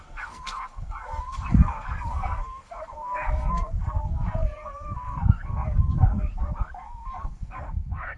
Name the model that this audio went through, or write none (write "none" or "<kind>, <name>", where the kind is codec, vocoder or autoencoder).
codec, SNAC